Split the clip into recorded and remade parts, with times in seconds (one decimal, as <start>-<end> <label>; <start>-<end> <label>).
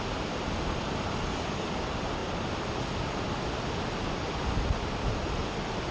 0.0-5.9 remade